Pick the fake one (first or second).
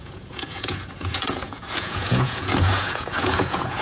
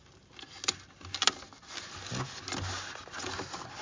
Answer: first